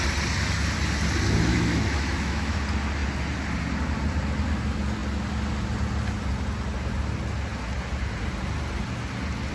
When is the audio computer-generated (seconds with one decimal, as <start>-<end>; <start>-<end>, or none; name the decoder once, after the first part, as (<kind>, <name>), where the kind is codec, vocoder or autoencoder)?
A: 1.5-2.6 (autoencoder, DAC-VAE)

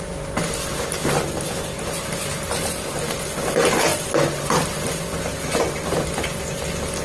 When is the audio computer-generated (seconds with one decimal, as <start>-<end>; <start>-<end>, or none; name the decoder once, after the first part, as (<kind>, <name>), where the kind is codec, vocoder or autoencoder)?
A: none